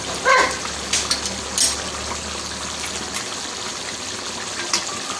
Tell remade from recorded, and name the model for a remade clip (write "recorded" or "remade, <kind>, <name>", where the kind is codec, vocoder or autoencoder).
recorded